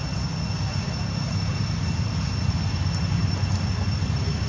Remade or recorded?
recorded